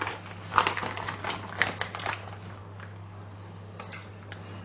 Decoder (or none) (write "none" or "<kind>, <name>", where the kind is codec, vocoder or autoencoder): none